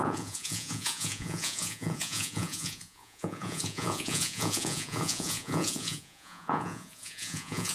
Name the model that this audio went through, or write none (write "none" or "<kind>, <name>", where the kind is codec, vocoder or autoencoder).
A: vocoder, Vocos